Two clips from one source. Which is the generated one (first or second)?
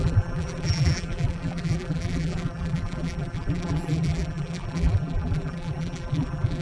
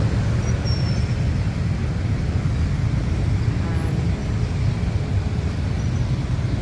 first